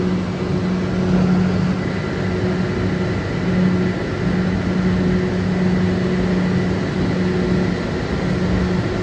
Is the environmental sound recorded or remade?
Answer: recorded